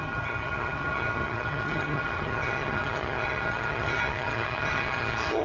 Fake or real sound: fake